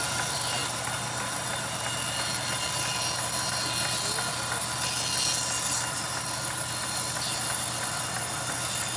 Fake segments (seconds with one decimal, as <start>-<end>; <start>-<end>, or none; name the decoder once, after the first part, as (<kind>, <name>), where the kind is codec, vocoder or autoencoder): none